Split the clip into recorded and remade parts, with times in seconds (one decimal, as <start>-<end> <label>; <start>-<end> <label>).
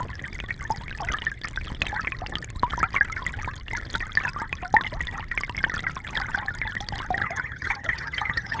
0.0-7.2 recorded; 7.2-8.6 remade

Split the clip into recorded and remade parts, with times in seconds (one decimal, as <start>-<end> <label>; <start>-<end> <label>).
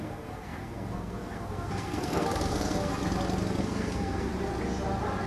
0.0-3.0 remade; 3.0-3.6 recorded; 3.6-4.3 remade; 4.3-5.3 recorded